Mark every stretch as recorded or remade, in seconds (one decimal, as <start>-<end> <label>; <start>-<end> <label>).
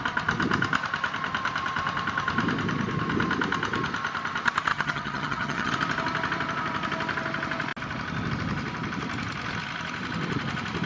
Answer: 0.0-4.7 recorded; 4.7-5.7 remade; 5.7-10.9 recorded